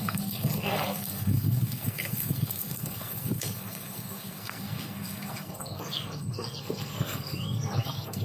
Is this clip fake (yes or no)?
yes